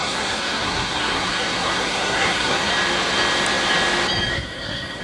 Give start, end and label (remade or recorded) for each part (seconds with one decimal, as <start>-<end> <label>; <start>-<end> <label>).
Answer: 0.0-2.7 remade; 2.7-4.3 recorded; 4.3-5.0 remade